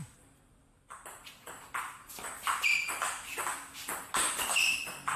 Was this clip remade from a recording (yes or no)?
no